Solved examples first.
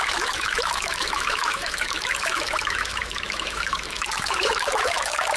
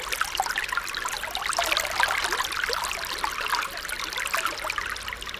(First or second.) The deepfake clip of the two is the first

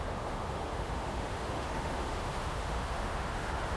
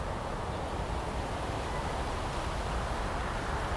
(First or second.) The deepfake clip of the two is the first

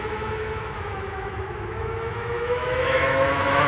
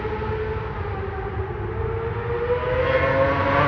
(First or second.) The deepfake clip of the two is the first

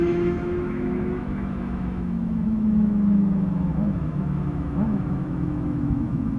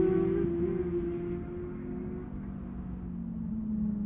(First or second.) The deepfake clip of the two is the first